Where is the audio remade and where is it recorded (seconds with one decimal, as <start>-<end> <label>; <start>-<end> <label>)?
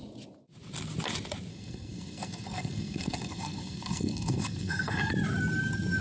0.0-1.5 recorded; 1.5-5.1 remade; 5.1-6.0 recorded